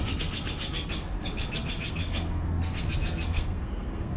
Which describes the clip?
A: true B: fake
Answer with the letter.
B